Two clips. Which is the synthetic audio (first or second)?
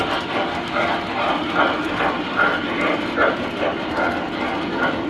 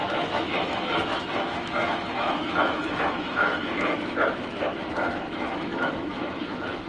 second